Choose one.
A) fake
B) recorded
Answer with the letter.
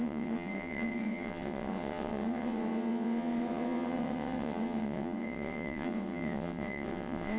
A